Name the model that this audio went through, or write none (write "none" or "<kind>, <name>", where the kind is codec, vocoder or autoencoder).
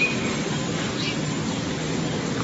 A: none